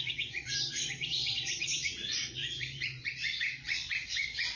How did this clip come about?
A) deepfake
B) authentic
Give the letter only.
A